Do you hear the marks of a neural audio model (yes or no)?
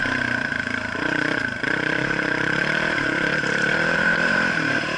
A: yes